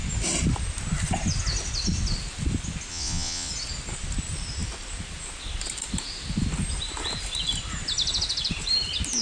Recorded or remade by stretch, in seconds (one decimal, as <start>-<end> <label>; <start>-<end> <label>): 0.0-2.9 recorded; 2.9-3.5 remade; 3.5-9.2 recorded